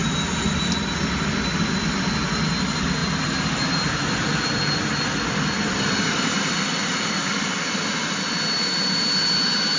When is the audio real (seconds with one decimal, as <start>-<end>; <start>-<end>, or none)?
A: 0.0-3.0; 7.4-9.8